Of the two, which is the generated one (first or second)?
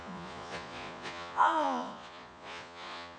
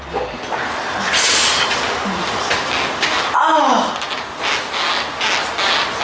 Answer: first